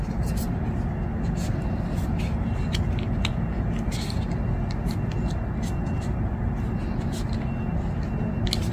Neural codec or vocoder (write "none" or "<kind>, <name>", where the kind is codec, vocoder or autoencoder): none